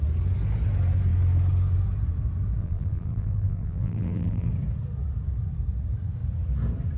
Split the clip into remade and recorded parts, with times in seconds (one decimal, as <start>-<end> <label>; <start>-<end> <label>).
0.0-2.6 recorded; 2.6-4.5 remade; 4.5-7.0 recorded